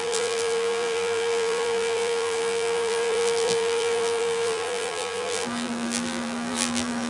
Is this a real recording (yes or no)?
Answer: no